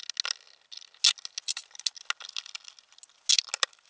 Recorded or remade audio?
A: recorded